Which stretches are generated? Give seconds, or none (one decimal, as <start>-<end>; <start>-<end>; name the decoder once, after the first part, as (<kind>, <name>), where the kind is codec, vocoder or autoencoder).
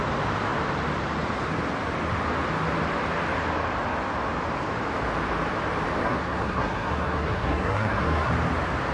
6.0-8.3 (codec, SNAC)